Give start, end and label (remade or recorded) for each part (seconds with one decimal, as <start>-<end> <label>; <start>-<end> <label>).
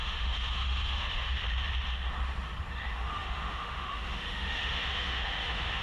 0.0-1.4 remade; 1.4-2.7 recorded; 2.7-5.8 remade